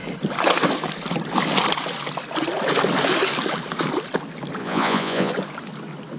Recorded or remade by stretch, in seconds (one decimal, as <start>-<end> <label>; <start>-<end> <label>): 0.0-4.6 recorded; 4.6-5.3 remade; 5.3-6.2 recorded